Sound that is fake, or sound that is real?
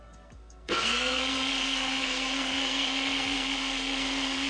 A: fake